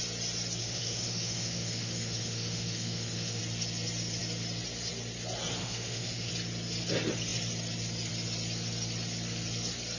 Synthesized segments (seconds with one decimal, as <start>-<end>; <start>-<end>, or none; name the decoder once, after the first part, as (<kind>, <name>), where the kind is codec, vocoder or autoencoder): 0.6-3.4 (autoencoder, DAC-VAE); 5.6-6.3